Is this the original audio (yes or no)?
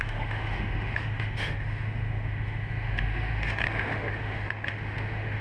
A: no